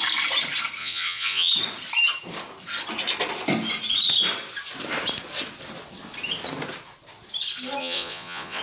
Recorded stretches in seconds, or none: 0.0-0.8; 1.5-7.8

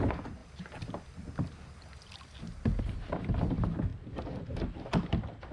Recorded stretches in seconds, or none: 0.0-5.5